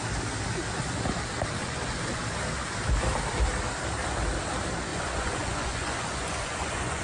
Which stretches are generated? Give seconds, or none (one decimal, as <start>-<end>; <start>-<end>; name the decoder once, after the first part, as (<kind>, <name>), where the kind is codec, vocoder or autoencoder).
1.6-2.2 (vocoder, Vocos); 4.9-7.0